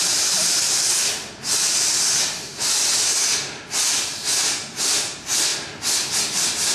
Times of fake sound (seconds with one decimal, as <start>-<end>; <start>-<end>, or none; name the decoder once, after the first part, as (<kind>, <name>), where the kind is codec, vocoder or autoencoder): none